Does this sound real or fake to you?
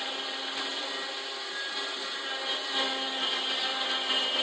real